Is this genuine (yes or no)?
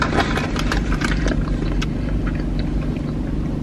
yes